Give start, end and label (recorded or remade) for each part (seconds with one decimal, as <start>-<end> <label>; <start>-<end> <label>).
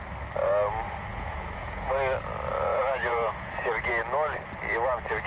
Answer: 0.0-1.1 recorded; 1.1-1.9 remade; 1.9-2.7 recorded; 2.7-3.5 remade; 3.5-5.3 recorded